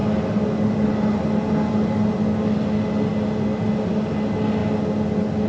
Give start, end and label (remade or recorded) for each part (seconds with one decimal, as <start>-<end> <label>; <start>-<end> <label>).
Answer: 0.0-5.5 recorded